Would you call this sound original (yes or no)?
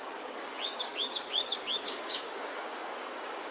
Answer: no